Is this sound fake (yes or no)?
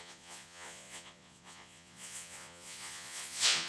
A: yes